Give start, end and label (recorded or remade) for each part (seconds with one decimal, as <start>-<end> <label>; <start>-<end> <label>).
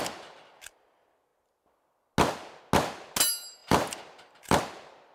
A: 0.0-3.6 recorded; 3.6-4.6 remade; 4.6-5.1 recorded